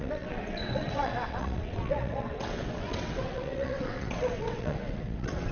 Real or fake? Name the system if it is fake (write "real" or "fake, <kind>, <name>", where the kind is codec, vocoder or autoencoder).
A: fake, vocoder, WaveNeXt